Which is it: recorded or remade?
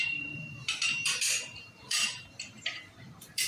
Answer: remade